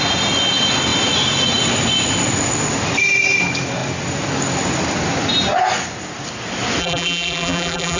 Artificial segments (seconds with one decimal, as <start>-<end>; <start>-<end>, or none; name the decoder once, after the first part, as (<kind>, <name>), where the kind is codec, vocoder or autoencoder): 6.8-8.0 (vocoder, BigVGAN v2)